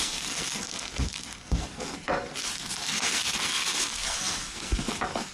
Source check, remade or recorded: remade